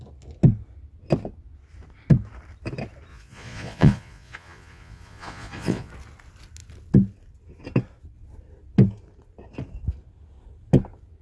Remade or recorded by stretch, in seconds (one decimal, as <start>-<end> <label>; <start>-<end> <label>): 0.0-3.1 recorded; 3.1-5.9 remade; 5.9-11.2 recorded